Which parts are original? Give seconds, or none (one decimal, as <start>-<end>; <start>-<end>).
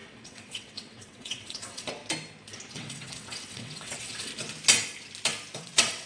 2.0-2.7; 4.3-5.6